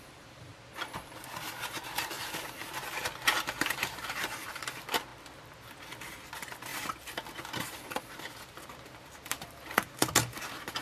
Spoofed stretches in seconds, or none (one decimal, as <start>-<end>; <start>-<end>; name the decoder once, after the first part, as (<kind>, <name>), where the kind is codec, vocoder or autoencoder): 0.5-1.1 (vocoder, BigVGAN v2)